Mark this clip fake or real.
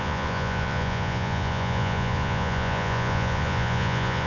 fake